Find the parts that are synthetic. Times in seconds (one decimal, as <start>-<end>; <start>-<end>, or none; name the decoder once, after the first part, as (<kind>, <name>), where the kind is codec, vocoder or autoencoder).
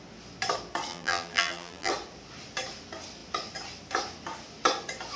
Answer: 0.9-1.9 (vocoder, BigVGAN v2)